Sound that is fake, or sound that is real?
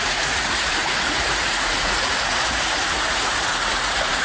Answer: fake